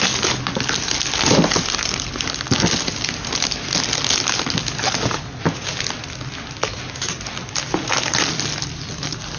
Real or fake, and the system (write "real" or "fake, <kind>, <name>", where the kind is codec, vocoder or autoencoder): real